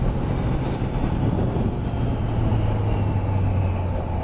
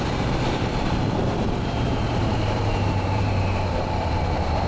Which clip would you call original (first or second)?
first